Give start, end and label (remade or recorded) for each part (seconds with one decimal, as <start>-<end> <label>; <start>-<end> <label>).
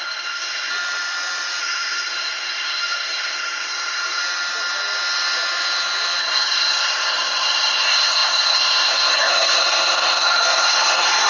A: 0.0-0.7 remade; 0.7-1.6 recorded; 1.6-4.2 remade; 4.2-6.2 recorded; 6.2-11.3 remade